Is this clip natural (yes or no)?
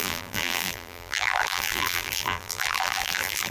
no